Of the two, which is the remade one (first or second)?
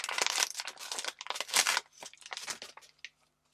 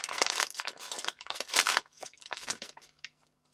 second